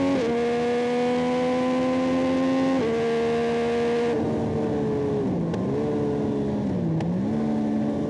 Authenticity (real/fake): real